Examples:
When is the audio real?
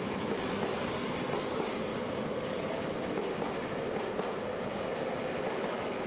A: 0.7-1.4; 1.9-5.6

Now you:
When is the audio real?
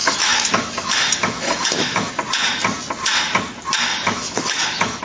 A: 2.1-3.9